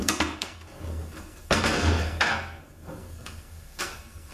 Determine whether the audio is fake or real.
fake